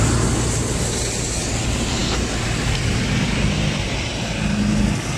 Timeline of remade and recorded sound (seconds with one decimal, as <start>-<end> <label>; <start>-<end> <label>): 0.0-5.2 recorded

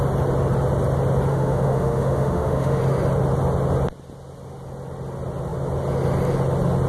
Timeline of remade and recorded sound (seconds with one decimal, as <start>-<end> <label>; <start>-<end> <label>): 0.0-1.3 recorded; 1.3-2.8 remade; 2.8-6.9 recorded

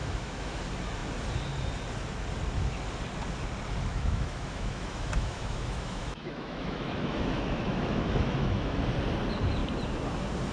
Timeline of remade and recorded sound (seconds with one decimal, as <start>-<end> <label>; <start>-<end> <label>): 0.0-0.6 remade; 0.6-3.9 recorded; 3.9-8.8 remade; 8.8-10.5 recorded

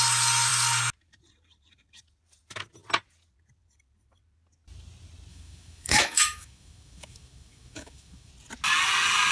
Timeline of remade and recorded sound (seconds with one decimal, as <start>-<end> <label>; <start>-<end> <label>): 0.0-5.3 recorded; 5.3-8.3 remade; 8.3-9.3 recorded

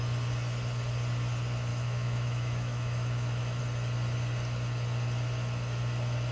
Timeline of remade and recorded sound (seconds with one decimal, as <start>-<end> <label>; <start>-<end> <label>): 0.0-1.7 recorded; 1.7-3.6 remade; 3.6-6.3 recorded

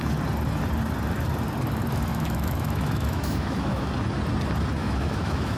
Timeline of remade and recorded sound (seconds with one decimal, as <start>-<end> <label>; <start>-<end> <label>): 0.0-2.1 recorded; 2.1-3.9 remade; 3.9-4.8 recorded; 4.8-5.6 remade